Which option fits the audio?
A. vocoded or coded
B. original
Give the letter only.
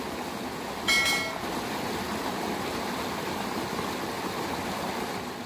B